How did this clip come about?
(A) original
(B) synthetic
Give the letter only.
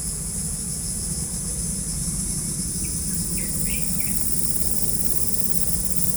A